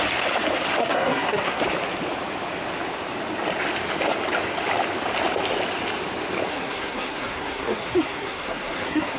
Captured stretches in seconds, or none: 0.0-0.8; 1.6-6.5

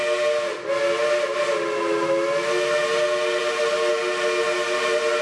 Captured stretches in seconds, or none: 0.0-5.2